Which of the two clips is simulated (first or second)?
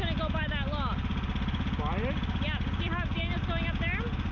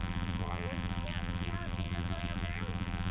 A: second